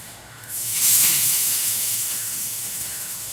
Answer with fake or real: fake